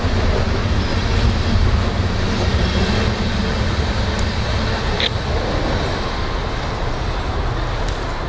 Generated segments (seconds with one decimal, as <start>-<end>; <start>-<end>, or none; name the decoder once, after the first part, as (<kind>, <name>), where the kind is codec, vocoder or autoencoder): 3.4-4.4 (vocoder, BigVGAN v2)

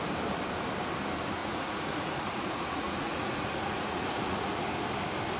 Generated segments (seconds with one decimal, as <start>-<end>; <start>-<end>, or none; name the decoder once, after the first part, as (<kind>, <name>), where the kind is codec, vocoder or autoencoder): 1.4-4.6 (vocoder, Vocos)

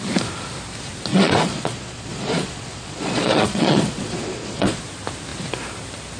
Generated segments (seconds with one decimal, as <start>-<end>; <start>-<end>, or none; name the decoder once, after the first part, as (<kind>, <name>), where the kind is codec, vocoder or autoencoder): 1.1-4.8 (vocoder, Vocos)

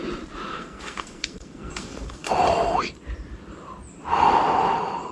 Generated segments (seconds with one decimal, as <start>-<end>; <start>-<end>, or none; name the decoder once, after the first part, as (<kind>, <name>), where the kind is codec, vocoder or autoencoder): 0.5-2.3 (codec, SNAC)

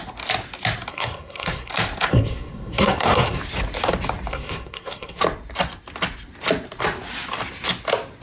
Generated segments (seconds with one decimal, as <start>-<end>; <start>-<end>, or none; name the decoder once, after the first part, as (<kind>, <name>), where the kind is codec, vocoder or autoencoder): 0.9-1.7 (codec, SNAC); 2.1-3.4; 4.3-5.2

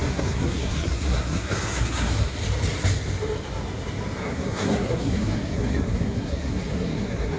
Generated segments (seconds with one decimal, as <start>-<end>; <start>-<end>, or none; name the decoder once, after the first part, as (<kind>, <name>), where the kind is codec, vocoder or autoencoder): 0.0-2.4 (codec, SNAC); 4.2-7.4

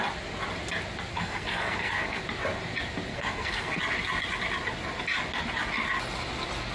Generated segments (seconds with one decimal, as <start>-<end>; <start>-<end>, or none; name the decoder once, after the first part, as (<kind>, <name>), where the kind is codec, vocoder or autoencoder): 1.1-2.2 (codec, SNAC); 3.1-3.8

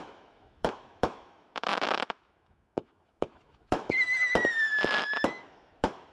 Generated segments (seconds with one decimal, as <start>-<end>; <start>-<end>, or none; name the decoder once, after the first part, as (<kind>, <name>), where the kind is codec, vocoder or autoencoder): 0.0-4.1 (autoencoder, DAC-VAE); 5.0-6.1